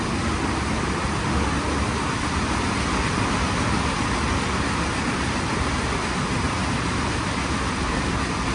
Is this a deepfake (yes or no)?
no